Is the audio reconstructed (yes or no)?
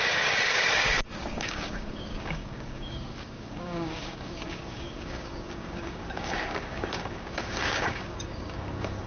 yes